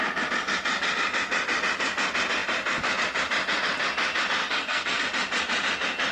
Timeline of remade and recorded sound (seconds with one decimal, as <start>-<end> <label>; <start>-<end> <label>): 0.0-4.4 recorded; 4.4-5.0 remade; 5.0-6.1 recorded